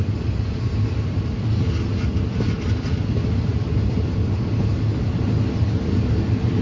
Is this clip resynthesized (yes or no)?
no